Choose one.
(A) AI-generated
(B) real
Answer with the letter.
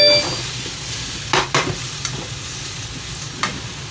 B